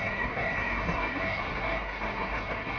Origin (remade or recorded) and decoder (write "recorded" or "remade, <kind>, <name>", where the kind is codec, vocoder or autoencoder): remade, codec, SNAC